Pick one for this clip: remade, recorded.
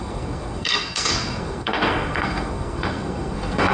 remade